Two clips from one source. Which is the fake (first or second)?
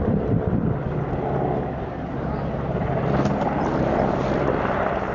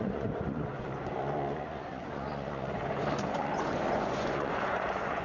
second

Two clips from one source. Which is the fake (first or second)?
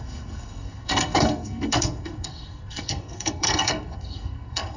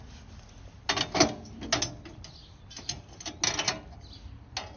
first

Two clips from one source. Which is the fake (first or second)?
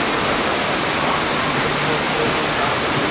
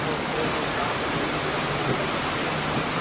second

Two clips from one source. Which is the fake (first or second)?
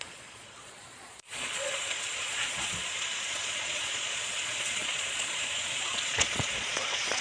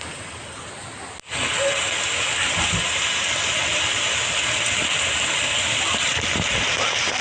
first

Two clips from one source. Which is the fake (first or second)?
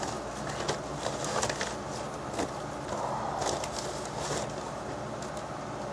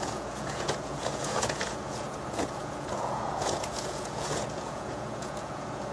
second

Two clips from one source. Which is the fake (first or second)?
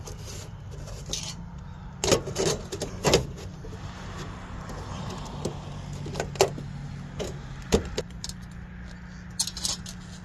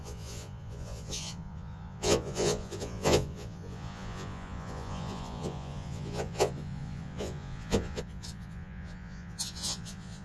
second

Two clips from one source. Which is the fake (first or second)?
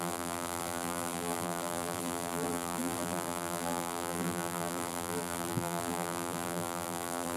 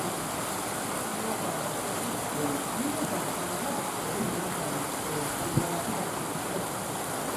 first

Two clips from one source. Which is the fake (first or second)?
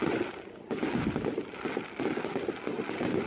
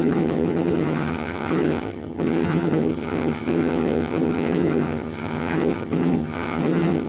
second